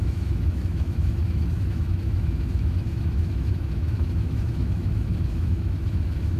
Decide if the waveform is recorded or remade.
remade